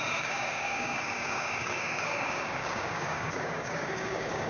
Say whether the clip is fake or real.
fake